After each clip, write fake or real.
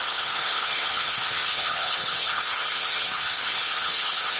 fake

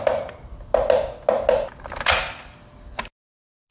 real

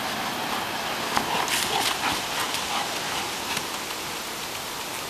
real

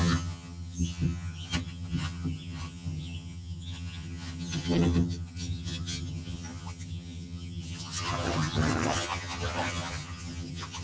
fake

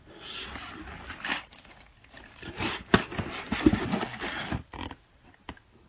real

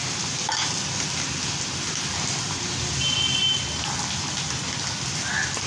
real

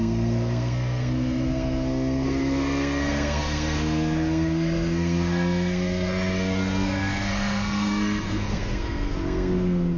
fake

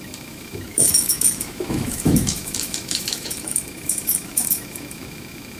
fake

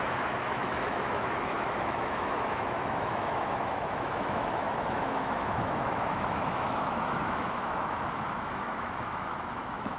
fake